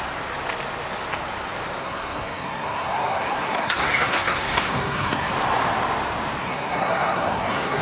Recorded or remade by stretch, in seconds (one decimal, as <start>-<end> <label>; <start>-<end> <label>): 0.0-1.8 recorded; 1.8-5.3 remade; 5.3-6.4 recorded; 6.4-7.8 remade